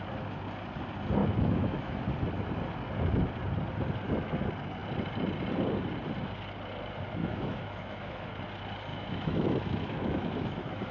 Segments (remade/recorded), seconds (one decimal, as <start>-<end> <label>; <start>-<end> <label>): 0.0-1.2 recorded; 1.2-2.0 remade; 2.0-7.2 recorded; 7.2-8.3 remade; 8.3-8.9 recorded; 8.9-10.9 remade